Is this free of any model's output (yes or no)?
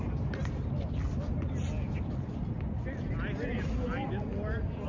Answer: yes